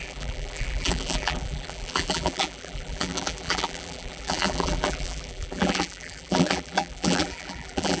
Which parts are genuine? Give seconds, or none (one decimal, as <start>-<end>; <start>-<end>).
none